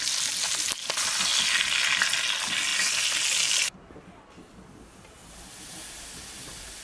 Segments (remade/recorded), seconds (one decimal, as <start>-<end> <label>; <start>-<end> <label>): 0.0-6.8 recorded